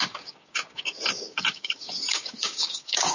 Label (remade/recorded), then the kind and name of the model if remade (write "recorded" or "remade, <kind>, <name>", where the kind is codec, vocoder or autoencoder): remade, codec, DAC